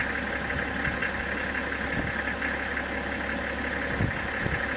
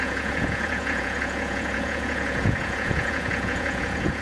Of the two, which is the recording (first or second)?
first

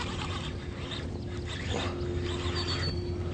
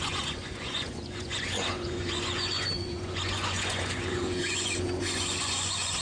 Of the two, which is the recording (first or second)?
first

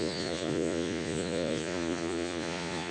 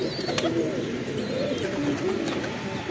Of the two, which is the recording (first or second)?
second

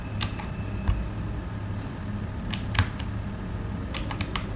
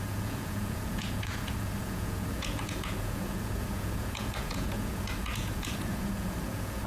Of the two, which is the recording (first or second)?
first